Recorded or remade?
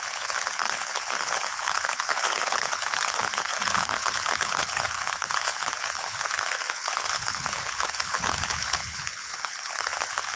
remade